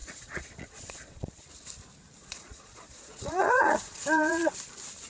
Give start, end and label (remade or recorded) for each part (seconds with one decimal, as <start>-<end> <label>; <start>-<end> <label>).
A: 0.0-1.3 remade; 1.3-2.2 recorded; 2.2-4.5 remade; 4.5-5.1 recorded